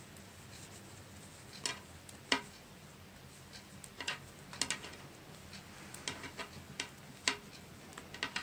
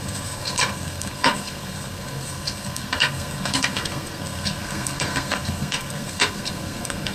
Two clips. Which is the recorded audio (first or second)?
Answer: first